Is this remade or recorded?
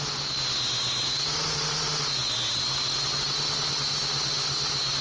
recorded